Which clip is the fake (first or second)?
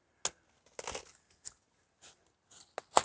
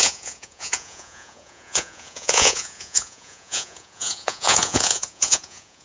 second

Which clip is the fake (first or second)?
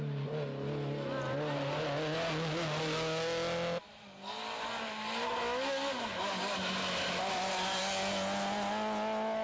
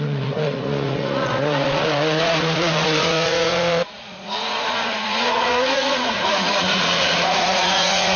second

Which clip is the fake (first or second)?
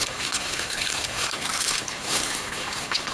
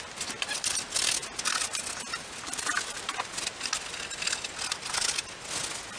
first